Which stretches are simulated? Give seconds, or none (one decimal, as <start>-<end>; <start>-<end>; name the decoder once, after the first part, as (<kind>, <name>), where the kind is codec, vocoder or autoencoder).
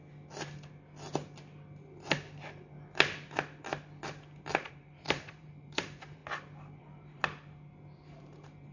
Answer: 4.7-6.2 (vocoder, BigVGAN v2); 6.8-7.2; 8.2-8.7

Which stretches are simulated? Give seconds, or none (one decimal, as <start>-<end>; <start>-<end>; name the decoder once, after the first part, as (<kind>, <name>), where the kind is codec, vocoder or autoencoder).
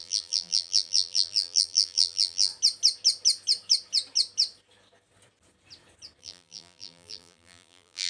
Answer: 0.0-2.5 (vocoder, BigVGAN v2); 6.2-8.1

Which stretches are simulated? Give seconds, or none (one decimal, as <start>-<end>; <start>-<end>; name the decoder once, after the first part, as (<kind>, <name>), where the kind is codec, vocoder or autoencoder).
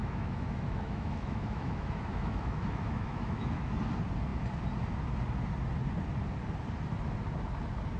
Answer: 0.0-3.7 (autoencoder, DAC-VAE)